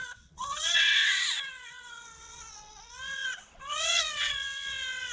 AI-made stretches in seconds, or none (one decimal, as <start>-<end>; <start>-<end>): 0.0-5.1